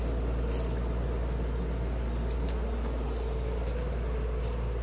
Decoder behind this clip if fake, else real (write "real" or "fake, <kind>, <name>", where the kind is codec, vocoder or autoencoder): real